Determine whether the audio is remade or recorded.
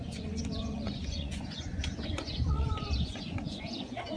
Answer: remade